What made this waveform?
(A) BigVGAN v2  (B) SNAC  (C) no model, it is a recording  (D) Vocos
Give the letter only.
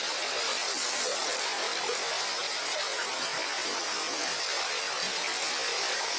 C